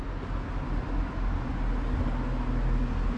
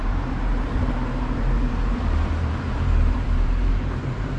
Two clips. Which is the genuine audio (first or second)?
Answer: first